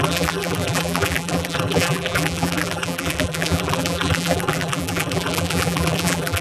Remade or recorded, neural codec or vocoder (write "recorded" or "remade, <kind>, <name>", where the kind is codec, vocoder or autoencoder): remade, vocoder, BigVGAN v2